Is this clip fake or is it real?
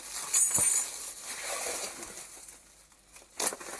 fake